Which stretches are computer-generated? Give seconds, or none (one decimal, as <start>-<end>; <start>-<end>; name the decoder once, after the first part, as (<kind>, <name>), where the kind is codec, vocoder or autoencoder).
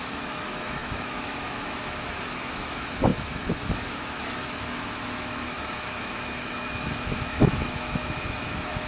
0.0-8.9 (autoencoder, DAC-VAE)